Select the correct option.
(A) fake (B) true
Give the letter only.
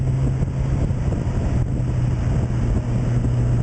B